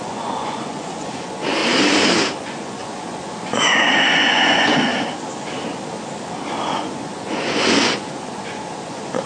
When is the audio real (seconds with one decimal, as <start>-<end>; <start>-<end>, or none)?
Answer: 1.6-2.4; 4.9-6.5